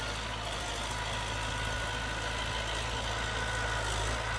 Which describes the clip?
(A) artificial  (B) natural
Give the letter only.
B